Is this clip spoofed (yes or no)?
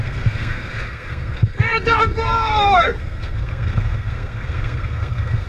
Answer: yes